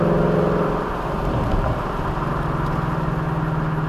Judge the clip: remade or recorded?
recorded